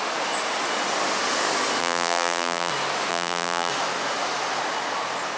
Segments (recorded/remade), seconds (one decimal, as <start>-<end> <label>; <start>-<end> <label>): 0.0-1.8 recorded; 1.8-2.7 remade; 2.7-3.1 recorded; 3.1-3.7 remade; 3.7-5.4 recorded